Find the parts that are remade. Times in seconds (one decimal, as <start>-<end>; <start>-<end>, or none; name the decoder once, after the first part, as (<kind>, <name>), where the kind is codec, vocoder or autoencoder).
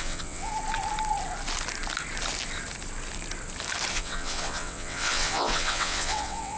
0.0-0.5 (vocoder, WaveNeXt); 3.9-6.6